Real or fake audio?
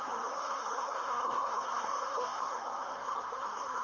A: fake